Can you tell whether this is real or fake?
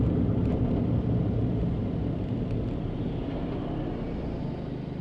real